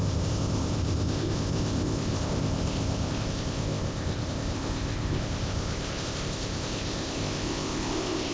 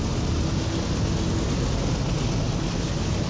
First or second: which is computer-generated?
first